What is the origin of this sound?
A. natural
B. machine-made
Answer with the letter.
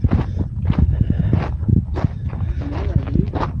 A